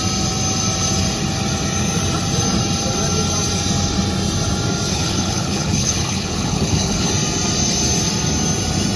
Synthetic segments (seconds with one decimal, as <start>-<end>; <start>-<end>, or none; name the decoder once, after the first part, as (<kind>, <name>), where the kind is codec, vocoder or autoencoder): 4.9-7.1 (codec, HILCodec)